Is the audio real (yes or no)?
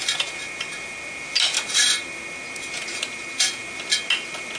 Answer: yes